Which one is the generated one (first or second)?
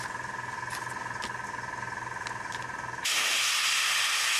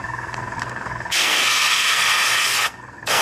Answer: second